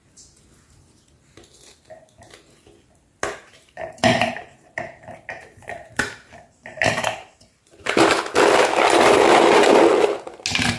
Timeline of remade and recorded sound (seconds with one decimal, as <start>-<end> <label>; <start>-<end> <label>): 0.0-3.4 recorded; 3.4-8.3 remade; 8.3-10.8 recorded